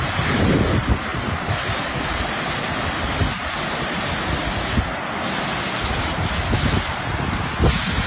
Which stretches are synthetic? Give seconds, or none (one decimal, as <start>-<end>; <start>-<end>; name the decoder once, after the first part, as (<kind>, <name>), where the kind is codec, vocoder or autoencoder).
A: 1.1-6.0 (vocoder, BigVGAN v2)